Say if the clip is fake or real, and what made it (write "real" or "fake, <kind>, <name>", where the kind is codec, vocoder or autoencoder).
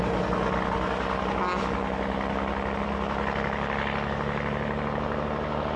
real